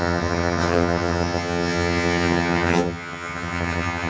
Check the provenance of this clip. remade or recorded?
remade